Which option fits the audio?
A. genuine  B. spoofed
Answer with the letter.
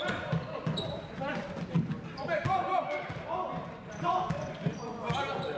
A